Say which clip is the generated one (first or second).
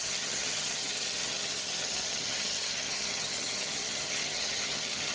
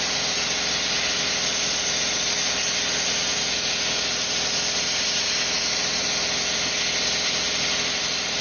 first